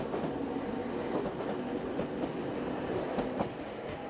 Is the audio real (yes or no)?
yes